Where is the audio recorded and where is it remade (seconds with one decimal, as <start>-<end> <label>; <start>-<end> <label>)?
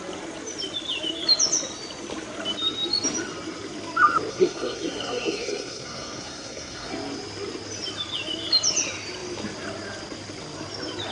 0.0-4.3 recorded; 4.3-6.9 remade; 6.9-11.1 recorded